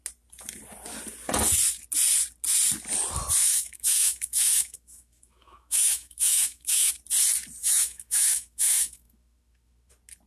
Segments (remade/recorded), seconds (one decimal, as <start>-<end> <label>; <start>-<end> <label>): 0.0-3.4 recorded; 3.4-6.9 remade; 6.9-7.6 recorded; 7.6-9.9 remade; 9.9-10.3 recorded